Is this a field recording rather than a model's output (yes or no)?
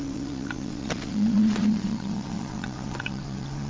no